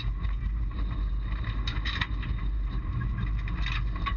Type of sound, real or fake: real